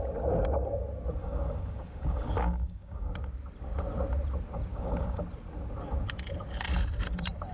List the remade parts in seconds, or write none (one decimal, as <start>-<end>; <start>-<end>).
1.2-3.1; 4.7-5.2